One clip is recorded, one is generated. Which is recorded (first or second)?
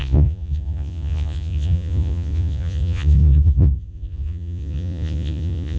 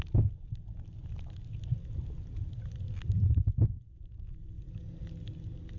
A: second